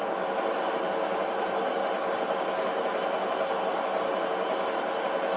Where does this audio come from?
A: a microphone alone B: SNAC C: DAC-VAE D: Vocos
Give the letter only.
A